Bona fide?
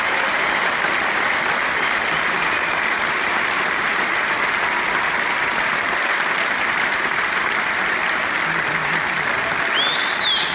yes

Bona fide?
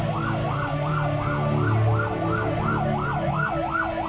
yes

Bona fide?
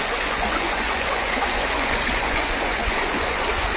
no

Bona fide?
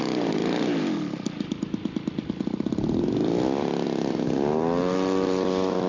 yes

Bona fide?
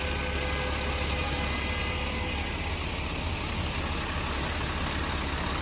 yes